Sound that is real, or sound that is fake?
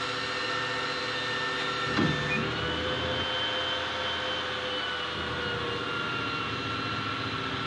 real